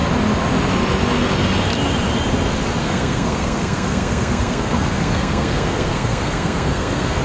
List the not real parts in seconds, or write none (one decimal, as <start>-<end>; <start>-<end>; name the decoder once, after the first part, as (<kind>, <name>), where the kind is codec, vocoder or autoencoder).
2.8-7.2 (codec, SNAC)